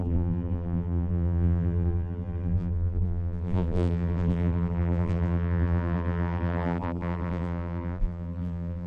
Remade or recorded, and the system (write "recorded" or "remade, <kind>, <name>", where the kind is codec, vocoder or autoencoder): remade, vocoder, BigVGAN v2